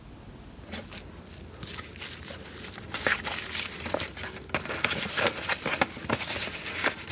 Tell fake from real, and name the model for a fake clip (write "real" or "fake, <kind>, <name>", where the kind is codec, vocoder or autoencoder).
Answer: real